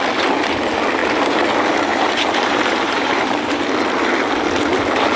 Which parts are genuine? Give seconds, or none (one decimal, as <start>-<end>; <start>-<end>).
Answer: 0.0-1.0; 1.5-1.9; 3.6-5.2